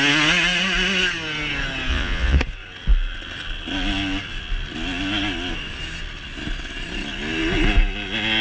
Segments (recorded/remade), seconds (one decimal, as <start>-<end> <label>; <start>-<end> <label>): 0.0-1.9 recorded; 1.9-2.4 remade; 2.4-8.4 recorded